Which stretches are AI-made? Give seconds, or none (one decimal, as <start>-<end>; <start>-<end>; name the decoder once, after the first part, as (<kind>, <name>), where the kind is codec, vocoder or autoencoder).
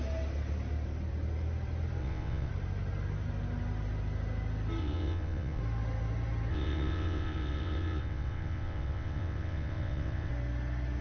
2.0-2.5 (vocoder, WaveNeXt); 4.8-5.6; 6.5-10.3